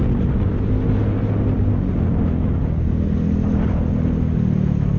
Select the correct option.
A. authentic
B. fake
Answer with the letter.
A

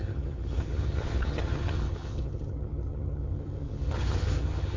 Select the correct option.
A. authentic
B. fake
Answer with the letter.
B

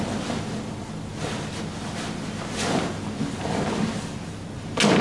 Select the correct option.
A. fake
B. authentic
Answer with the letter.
B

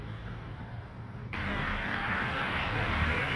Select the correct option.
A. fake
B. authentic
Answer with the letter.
A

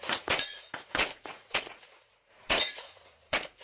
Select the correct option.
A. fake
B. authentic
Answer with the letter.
A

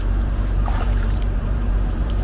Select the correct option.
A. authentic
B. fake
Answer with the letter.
B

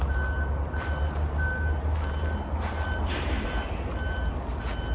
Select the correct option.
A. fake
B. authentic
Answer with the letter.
B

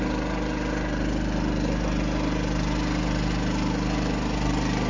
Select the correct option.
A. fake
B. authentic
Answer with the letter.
B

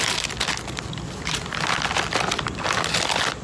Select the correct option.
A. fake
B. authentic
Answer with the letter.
B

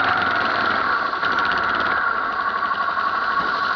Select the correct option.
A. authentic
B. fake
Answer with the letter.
A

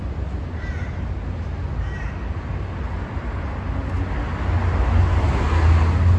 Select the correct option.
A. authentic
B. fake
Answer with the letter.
A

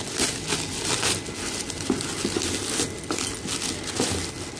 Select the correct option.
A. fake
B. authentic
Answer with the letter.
B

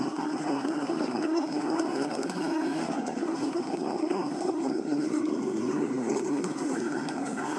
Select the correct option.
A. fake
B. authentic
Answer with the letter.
A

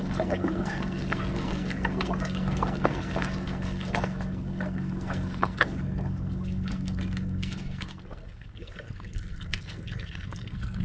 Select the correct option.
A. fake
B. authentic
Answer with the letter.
A